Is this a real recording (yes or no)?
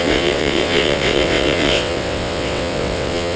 no